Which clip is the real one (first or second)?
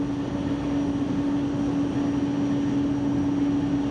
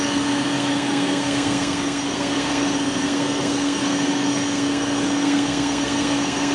first